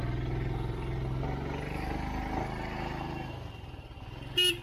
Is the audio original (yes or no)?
yes